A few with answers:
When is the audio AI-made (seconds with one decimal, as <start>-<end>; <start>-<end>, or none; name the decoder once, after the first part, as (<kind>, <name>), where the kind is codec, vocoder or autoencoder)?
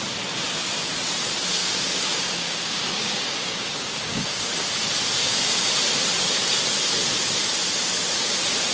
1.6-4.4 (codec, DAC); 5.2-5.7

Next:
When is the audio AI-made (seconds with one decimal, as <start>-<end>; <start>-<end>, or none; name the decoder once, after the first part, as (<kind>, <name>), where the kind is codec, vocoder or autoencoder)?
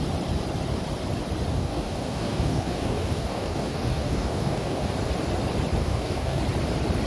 1.5-4.9 (codec, DAC); 5.8-6.4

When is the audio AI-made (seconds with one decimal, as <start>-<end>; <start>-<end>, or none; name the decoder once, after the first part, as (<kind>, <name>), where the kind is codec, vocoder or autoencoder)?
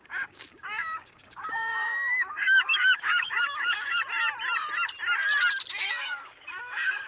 0.0-4.0 (codec, DAC); 5.7-7.1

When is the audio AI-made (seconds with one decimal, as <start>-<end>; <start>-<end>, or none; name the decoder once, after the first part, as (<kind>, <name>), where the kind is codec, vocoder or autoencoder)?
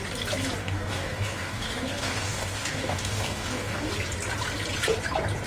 0.6-3.9 (codec, DAC)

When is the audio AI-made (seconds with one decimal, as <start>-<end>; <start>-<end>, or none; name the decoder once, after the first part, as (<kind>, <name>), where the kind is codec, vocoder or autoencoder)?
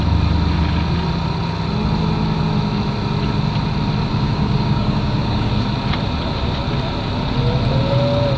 4.1-5.5 (codec, DAC)